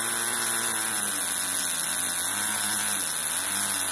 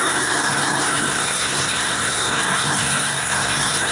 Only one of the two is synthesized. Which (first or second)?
second